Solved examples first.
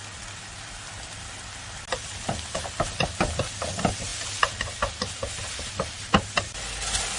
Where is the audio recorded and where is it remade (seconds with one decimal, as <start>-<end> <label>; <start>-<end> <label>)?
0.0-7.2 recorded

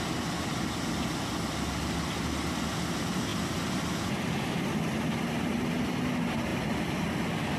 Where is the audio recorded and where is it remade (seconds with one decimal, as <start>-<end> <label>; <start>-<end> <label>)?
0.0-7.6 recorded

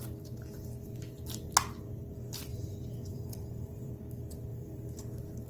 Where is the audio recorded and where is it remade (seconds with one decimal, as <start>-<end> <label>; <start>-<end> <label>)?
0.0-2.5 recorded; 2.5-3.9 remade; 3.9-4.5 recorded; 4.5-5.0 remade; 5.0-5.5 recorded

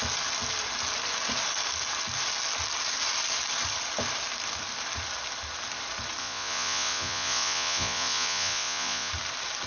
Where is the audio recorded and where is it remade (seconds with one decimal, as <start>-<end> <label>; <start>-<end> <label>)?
0.0-6.2 recorded; 6.2-9.1 remade; 9.1-9.7 recorded